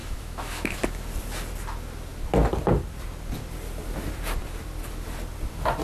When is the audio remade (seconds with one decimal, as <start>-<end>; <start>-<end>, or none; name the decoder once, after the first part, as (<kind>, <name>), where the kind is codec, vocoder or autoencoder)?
0.0-0.8 (autoencoder, DAC-VAE)